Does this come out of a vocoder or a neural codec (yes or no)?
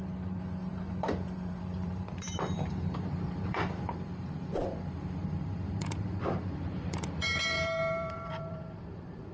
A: yes